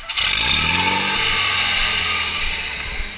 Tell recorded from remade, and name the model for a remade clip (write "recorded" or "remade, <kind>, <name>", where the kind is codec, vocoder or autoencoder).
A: recorded